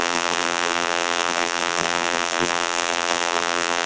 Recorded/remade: remade